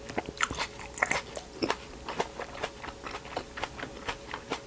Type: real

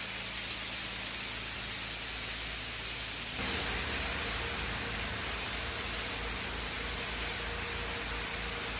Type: real